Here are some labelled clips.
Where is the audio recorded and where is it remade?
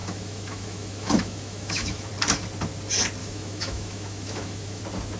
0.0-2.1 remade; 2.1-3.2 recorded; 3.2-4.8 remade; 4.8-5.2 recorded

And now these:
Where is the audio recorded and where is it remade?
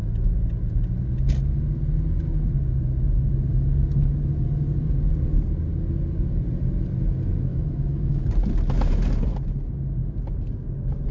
0.0-7.5 recorded; 7.5-8.2 remade; 8.2-11.1 recorded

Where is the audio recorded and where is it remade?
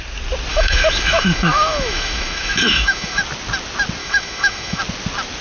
0.0-0.5 recorded; 0.5-3.2 remade; 3.2-4.0 recorded; 4.0-4.8 remade; 4.8-5.4 recorded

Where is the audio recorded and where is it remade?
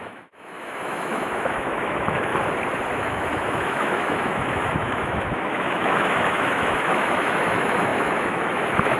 0.0-2.3 remade; 2.3-2.9 recorded; 2.9-9.0 remade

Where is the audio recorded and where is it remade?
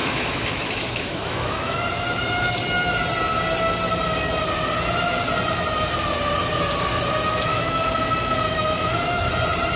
0.0-1.8 remade; 1.8-7.5 recorded; 7.5-9.3 remade; 9.3-9.8 recorded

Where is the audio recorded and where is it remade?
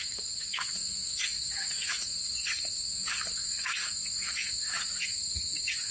0.0-5.9 remade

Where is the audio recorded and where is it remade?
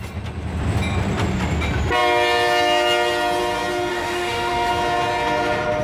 0.0-3.9 recorded; 3.9-4.7 remade; 4.7-5.8 recorded